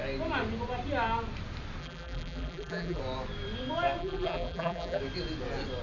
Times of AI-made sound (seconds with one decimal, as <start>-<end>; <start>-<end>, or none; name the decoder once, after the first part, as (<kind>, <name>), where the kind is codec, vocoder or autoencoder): 1.8-3.0 (vocoder, BigVGAN v2); 4.0-5.0